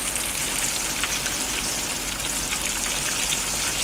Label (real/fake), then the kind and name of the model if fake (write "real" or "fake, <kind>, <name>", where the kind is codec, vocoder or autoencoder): real